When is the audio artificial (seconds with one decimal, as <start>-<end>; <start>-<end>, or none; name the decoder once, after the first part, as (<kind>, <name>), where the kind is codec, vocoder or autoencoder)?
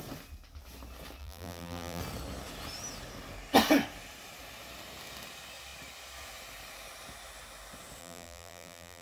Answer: 1.2-2.0 (vocoder, BigVGAN v2); 8.0-9.0